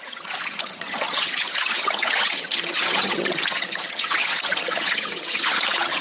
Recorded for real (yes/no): no